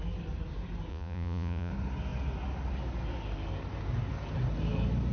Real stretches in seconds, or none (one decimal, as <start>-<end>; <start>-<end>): 0.0-0.9; 1.7-5.1